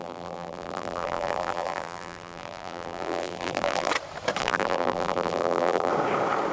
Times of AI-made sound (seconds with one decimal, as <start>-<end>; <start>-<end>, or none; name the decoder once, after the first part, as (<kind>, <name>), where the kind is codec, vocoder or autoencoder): 0.0-3.9 (vocoder, BigVGAN v2); 4.4-5.9